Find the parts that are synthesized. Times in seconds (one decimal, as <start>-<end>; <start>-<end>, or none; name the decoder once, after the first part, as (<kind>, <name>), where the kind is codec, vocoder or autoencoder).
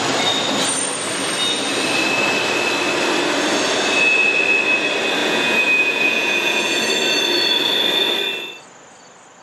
5.2-6.8 (vocoder, Vocos)